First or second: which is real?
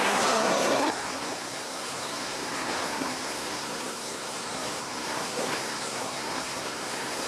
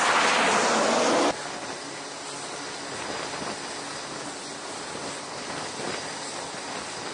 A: second